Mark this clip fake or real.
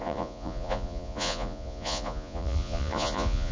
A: fake